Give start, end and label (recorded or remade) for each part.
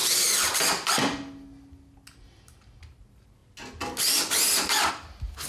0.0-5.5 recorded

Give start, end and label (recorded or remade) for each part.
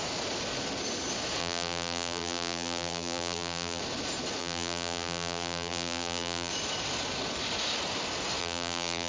0.0-1.4 recorded; 1.4-3.8 remade; 3.8-4.4 recorded; 4.4-6.5 remade; 6.5-8.4 recorded; 8.4-9.1 remade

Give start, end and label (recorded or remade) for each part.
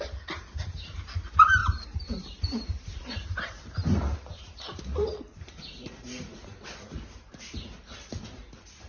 0.0-8.9 remade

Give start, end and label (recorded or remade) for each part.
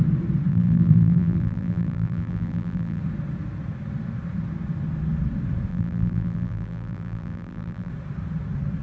0.0-0.5 recorded; 0.5-3.0 remade; 3.0-5.7 recorded; 5.7-7.9 remade; 7.9-8.8 recorded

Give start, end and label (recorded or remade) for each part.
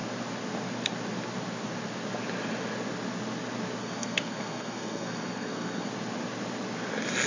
0.0-3.8 recorded; 3.8-5.9 remade; 5.9-7.3 recorded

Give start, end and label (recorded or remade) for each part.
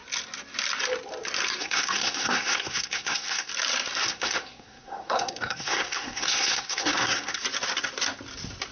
0.0-1.6 recorded; 1.6-3.5 remade; 3.5-4.1 recorded; 4.1-7.4 remade; 7.4-8.7 recorded